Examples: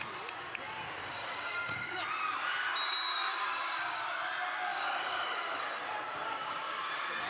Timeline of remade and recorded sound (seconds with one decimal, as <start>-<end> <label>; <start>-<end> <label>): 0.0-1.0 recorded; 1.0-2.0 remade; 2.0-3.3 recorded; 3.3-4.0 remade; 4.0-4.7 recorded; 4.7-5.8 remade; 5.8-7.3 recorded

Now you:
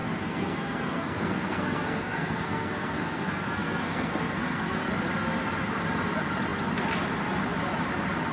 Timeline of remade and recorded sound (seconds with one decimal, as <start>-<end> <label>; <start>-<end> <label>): 0.0-4.9 remade; 4.9-8.3 recorded

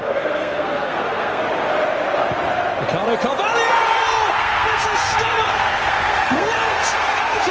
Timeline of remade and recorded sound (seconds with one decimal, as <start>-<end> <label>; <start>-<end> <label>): 0.0-1.4 remade; 1.4-4.3 recorded; 4.3-7.5 remade

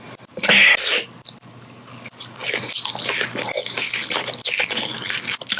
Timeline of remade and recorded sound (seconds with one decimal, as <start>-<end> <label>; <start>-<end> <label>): 0.0-5.6 recorded

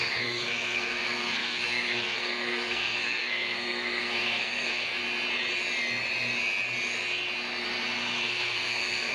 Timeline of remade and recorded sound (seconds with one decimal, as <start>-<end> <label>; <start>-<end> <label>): 0.0-5.0 remade; 5.0-8.2 recorded; 8.2-9.1 remade

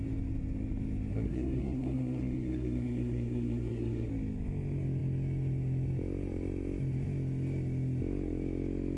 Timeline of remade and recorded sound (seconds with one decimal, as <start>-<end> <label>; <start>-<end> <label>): 0.0-1.1 recorded; 1.1-4.1 remade; 4.1-9.0 recorded

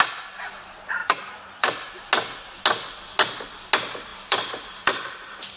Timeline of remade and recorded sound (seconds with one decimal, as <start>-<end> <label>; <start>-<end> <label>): 0.0-1.0 recorded; 1.0-2.1 remade; 2.1-4.1 recorded; 4.1-5.6 remade